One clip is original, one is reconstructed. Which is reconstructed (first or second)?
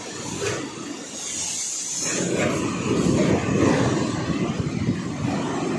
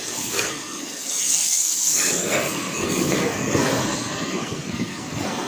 second